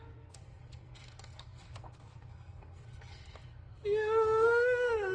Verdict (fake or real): fake